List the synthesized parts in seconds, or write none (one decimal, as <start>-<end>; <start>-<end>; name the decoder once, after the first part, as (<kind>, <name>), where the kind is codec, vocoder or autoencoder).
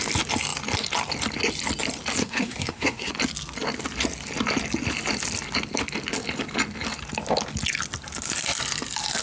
2.2-3.1 (codec, SNAC)